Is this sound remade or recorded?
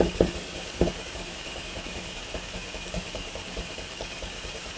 remade